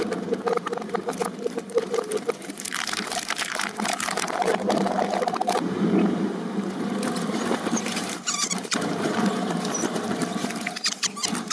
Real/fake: fake